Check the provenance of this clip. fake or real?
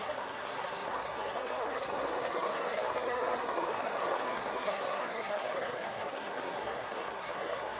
fake